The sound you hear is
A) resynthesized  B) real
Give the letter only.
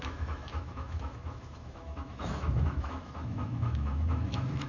A